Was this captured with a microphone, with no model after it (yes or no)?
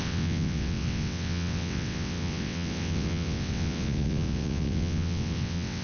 no